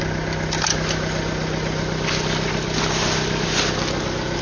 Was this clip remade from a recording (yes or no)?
no